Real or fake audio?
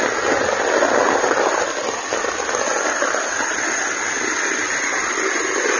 real